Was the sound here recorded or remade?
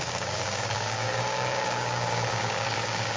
remade